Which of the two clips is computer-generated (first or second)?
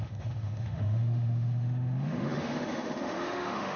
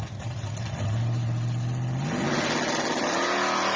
first